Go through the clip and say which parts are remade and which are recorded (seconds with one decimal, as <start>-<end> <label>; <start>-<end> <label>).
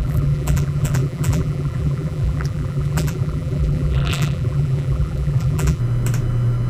0.0-5.8 remade; 5.8-6.7 recorded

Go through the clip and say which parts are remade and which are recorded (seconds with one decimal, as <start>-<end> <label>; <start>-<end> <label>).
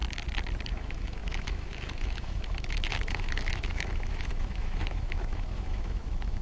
0.0-0.7 recorded; 0.7-6.4 remade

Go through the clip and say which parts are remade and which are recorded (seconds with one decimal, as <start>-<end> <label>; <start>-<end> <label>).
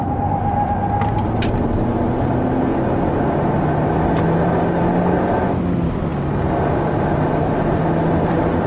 0.0-8.7 recorded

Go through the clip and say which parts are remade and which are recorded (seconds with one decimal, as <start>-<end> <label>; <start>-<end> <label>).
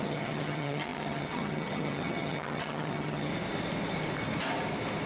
0.0-3.3 remade; 3.3-5.1 recorded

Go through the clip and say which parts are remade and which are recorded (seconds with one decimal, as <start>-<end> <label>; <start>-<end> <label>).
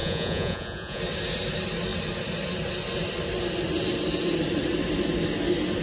0.0-1.0 remade; 1.0-5.8 recorded